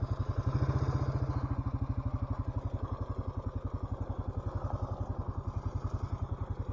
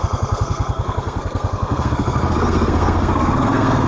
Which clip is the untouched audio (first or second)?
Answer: first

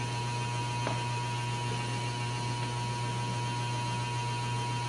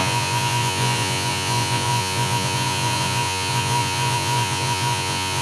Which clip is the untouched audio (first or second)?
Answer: first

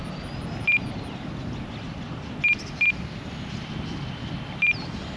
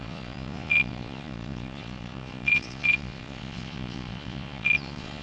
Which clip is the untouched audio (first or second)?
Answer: first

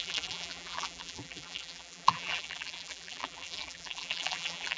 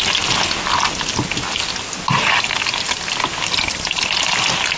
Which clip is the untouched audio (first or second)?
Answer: second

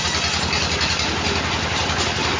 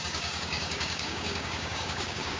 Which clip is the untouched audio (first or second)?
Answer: first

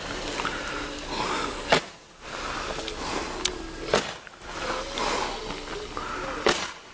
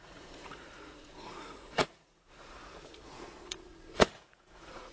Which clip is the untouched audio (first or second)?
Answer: first